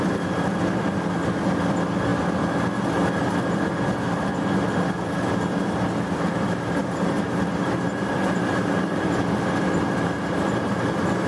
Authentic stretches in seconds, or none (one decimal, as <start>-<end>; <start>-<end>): 0.0-6.8; 9.2-11.3